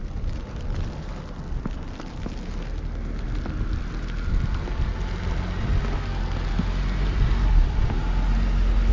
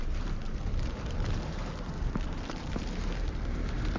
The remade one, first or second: second